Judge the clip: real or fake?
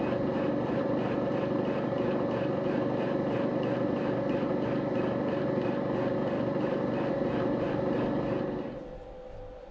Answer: real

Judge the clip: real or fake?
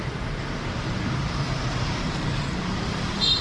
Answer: fake